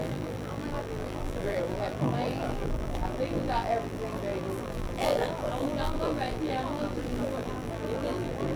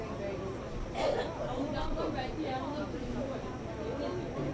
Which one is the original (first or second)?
second